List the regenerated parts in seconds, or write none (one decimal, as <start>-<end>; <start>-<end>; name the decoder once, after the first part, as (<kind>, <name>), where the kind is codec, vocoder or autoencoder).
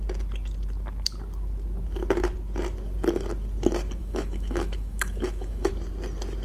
4.0-5.7 (autoencoder, DAC-VAE)